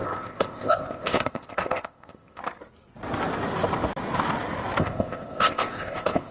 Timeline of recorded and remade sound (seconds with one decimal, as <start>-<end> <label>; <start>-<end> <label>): 0.0-2.4 remade; 2.4-4.8 recorded; 4.8-6.3 remade